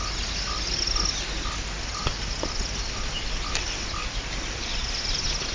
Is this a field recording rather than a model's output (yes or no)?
yes